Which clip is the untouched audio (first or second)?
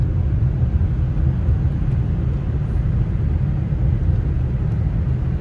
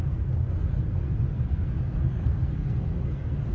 first